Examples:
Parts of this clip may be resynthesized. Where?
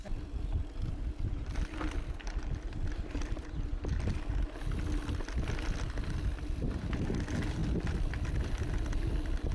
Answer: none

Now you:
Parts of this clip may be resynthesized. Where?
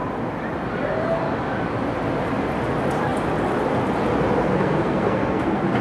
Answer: 4.4-5.8 (codec, SNAC)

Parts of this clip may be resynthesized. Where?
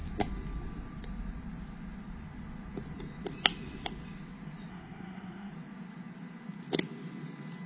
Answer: 4.7-5.5 (codec, SNAC)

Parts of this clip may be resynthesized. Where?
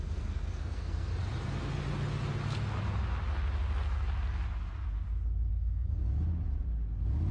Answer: 0.0-1.1 (codec, SNAC); 5.5-6.0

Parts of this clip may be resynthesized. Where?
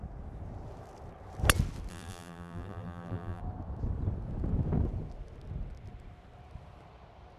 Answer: 1.9-3.4 (vocoder, BigVGAN v2)